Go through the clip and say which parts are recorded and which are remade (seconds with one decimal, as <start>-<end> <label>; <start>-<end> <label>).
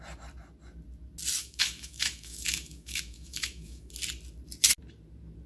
0.0-1.4 recorded; 1.4-3.9 remade; 3.9-5.5 recorded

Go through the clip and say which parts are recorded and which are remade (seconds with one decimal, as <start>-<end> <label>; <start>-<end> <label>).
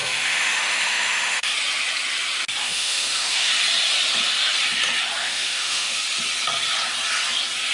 0.0-1.5 remade; 1.5-2.6 recorded; 2.6-3.5 remade; 3.5-5.2 recorded; 5.2-6.0 remade; 6.0-7.7 recorded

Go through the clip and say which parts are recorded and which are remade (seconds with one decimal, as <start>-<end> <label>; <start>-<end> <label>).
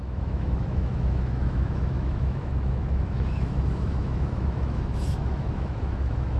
0.0-6.4 remade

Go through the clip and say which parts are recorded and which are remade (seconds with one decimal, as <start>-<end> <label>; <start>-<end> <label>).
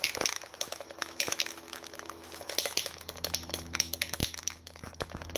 0.0-5.4 remade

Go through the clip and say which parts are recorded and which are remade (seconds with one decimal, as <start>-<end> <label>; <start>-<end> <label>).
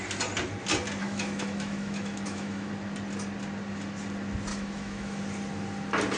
0.0-1.0 recorded; 1.0-2.7 remade; 2.7-4.5 recorded; 4.5-5.2 remade; 5.2-6.2 recorded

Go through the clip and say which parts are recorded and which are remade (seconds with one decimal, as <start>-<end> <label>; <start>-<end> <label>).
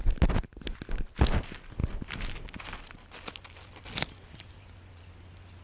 0.0-5.6 recorded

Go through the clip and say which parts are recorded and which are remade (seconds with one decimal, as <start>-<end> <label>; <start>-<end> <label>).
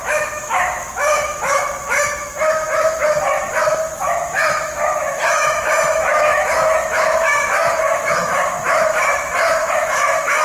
0.0-10.4 remade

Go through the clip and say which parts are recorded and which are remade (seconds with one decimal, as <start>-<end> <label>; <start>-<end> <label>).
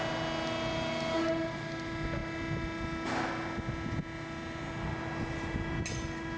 0.0-6.4 recorded